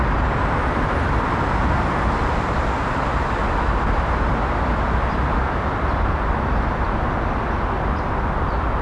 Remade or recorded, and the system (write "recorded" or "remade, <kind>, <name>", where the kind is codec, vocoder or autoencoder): recorded